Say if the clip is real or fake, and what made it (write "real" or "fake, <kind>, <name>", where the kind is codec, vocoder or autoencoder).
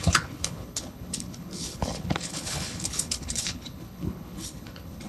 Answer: fake, codec, HILCodec